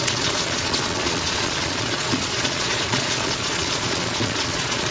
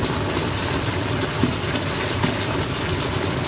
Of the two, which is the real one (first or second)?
second